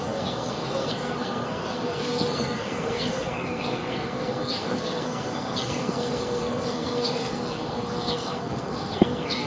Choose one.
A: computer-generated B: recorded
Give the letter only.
A